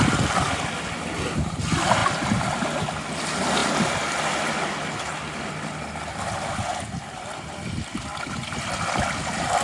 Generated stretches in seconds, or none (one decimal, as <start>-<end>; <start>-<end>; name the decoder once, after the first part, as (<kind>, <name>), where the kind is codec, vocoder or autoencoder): none